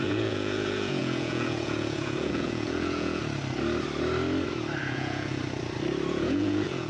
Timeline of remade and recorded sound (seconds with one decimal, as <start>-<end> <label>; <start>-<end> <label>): 0.0-3.2 remade; 3.2-4.9 recorded; 4.9-5.4 remade; 5.4-6.1 recorded; 6.1-6.9 remade